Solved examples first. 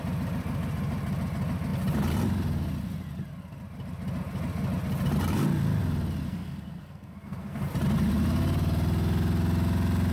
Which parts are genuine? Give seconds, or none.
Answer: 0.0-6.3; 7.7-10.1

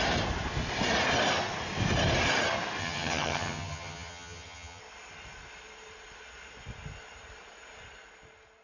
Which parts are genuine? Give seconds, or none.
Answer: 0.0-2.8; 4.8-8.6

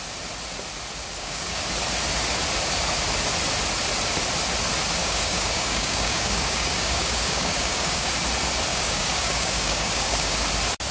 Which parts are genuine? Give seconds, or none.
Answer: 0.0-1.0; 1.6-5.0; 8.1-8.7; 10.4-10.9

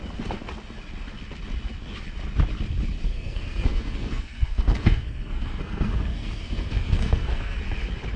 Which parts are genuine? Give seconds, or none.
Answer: 0.0-3.1; 7.6-8.2

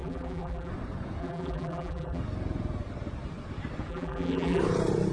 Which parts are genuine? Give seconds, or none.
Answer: 0.7-1.2; 2.2-3.9; 4.6-5.1

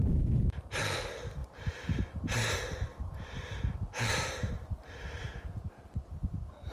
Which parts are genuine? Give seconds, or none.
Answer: 0.0-1.4; 4.5-6.7